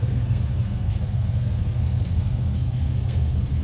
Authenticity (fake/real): fake